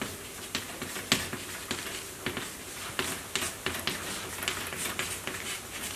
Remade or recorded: recorded